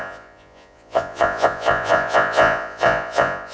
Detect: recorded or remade remade